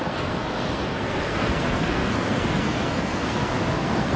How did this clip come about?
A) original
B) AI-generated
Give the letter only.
B